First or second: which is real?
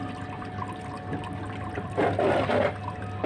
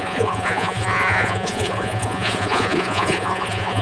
first